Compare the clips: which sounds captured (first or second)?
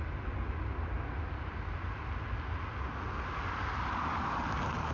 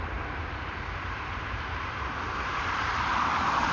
first